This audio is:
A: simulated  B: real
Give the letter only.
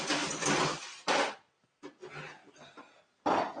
B